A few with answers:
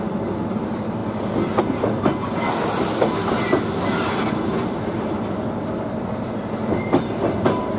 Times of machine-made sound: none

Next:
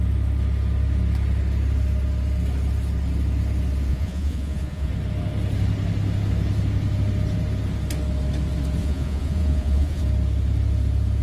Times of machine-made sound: 3.9-4.9 (vocoder, Vocos); 8.8-10.0

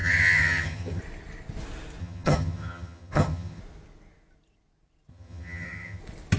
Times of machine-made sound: 0.0-1.0 (vocoder, HiFi-GAN); 2.0-3.6; 5.1-6.0

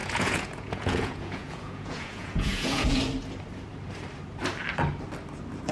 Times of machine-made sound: 0.0-3.0 (vocoder, Vocos)

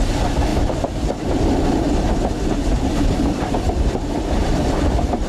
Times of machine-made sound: none

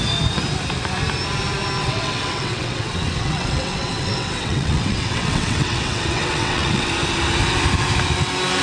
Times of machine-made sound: 1.8-6.9 (vocoder, WaveNeXt)

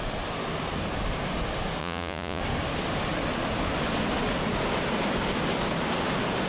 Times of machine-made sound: 1.8-2.4 (vocoder, Vocos)

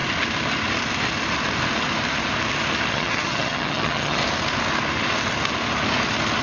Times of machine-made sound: 2.9-4.2 (vocoder, HiFi-GAN)